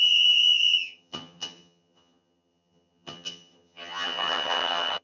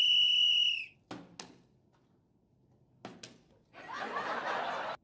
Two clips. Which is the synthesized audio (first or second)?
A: first